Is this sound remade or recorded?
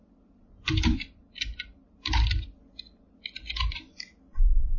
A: recorded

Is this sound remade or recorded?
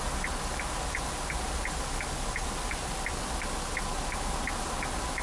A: recorded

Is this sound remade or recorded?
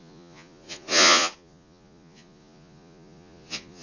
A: remade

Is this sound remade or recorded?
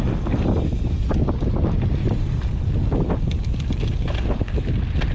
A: recorded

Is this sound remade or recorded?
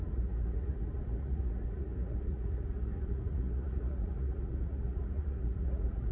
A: remade